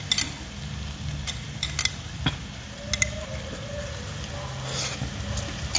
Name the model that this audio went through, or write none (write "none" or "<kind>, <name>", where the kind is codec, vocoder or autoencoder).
none